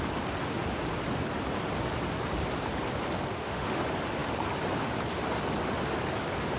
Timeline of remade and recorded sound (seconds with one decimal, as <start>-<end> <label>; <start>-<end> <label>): 0.0-3.3 recorded; 3.3-3.8 remade; 3.8-6.6 recorded